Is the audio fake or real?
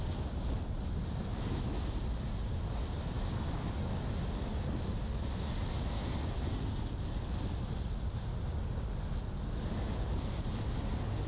real